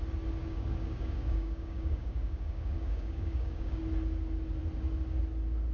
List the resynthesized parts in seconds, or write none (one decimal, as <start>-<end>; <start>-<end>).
0.4-3.8